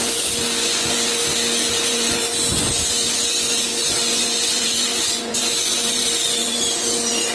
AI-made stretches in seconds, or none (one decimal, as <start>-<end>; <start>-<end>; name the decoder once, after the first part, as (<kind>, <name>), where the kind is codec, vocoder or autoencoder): 0.0-1.2 (vocoder, Vocos); 1.7-7.3